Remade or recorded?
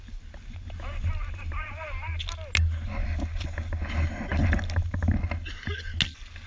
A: recorded